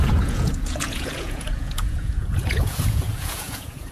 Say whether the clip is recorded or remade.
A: remade